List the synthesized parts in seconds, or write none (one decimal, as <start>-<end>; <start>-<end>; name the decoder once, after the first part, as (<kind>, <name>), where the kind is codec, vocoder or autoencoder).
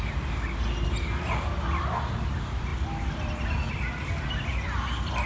none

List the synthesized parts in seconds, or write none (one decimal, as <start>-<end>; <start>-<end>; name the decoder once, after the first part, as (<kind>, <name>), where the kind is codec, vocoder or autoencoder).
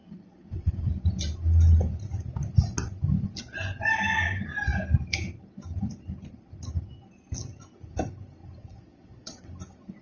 0.0-0.9 (vocoder, Vocos); 8.4-9.5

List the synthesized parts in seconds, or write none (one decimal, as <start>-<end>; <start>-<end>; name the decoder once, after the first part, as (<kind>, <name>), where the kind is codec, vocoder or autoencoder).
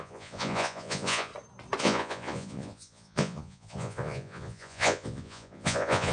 0.0-1.3 (vocoder, Vocos); 1.8-6.1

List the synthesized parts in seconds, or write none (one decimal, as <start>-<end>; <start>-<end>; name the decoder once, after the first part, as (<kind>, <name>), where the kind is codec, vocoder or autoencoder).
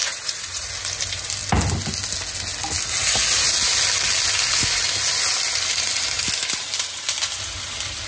0.0-0.7 (vocoder, Vocos)